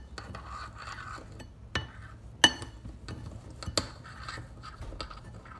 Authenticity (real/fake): real